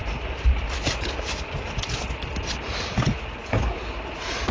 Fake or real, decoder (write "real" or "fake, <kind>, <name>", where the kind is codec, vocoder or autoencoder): real